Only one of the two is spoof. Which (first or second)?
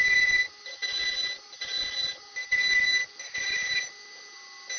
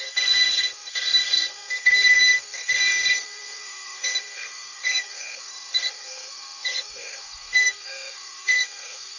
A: second